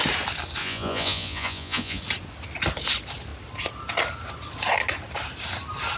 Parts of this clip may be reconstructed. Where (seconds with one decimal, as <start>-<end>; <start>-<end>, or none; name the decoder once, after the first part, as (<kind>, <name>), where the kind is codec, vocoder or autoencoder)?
0.6-2.0 (vocoder, Vocos)